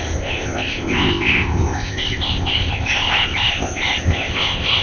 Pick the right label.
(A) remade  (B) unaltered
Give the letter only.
A